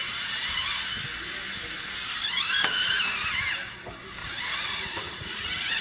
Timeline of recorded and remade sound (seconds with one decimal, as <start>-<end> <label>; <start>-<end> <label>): 0.0-4.2 recorded; 4.2-5.8 remade